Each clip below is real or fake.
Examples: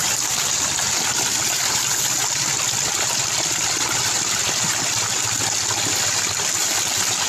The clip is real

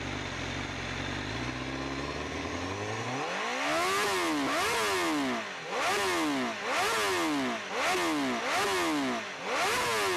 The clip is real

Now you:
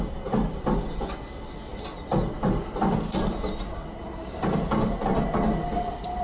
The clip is real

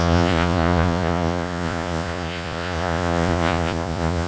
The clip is fake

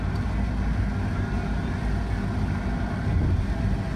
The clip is real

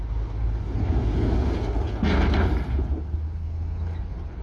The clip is real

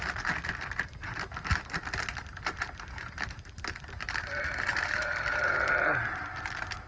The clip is real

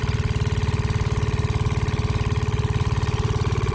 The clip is real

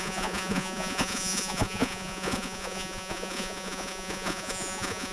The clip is fake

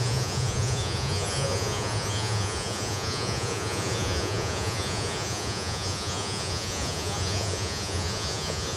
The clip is fake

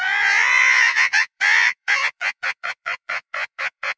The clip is fake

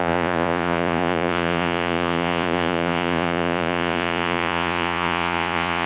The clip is fake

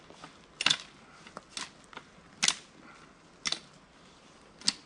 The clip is real